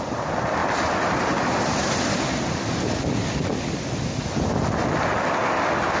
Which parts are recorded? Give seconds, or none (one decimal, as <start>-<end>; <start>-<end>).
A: 0.0-6.0